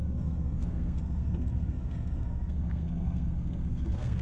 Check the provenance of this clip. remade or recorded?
remade